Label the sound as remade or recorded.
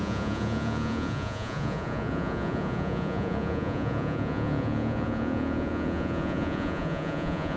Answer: remade